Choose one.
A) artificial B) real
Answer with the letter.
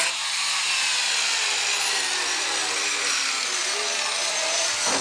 B